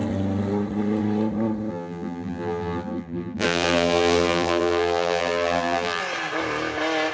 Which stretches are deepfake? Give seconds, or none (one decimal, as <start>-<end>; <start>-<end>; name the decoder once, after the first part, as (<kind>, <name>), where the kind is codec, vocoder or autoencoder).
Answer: 1.7-6.0 (vocoder, BigVGAN v2)